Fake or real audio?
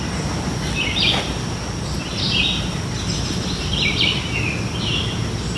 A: real